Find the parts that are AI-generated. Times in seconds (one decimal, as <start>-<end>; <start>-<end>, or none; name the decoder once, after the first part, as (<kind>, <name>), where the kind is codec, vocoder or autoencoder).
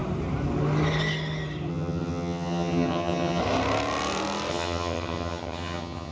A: 1.7-3.4 (vocoder, HiFi-GAN); 4.5-6.1